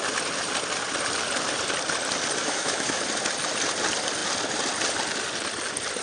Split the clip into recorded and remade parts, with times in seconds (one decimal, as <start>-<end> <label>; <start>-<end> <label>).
0.0-2.4 recorded; 2.4-3.0 remade; 3.0-6.0 recorded